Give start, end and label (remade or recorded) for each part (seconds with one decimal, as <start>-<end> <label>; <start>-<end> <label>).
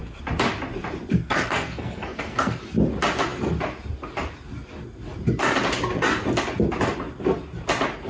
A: 0.0-1.1 recorded; 1.1-2.6 remade; 2.6-8.1 recorded